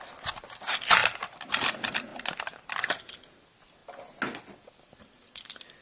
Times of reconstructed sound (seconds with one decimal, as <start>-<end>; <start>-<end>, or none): 1.0-1.7